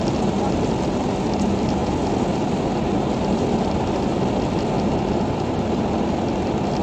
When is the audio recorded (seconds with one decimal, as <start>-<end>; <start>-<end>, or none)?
0.0-6.8